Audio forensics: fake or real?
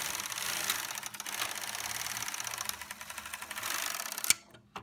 real